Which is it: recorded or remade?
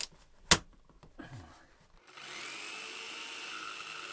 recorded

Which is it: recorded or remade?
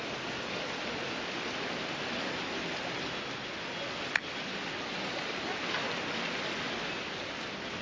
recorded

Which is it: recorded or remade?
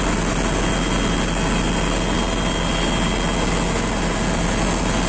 recorded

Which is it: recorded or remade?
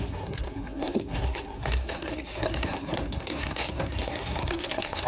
remade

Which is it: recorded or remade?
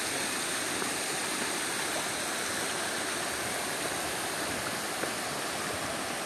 recorded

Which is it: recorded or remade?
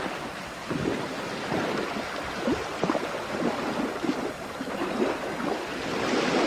recorded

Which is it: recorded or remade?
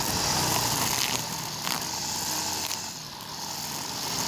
recorded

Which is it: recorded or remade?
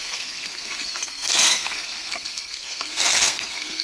remade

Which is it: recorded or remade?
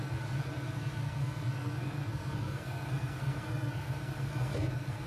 remade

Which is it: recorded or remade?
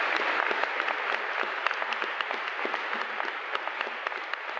recorded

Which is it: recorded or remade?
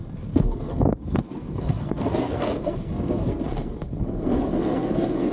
remade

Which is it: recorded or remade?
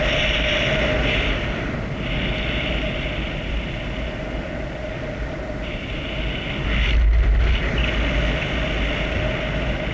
recorded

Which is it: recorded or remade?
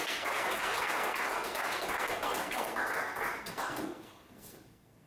remade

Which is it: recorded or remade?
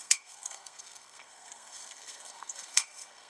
remade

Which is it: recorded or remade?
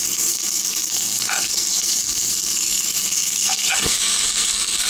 remade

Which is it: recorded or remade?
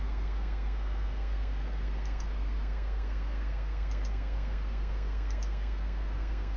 remade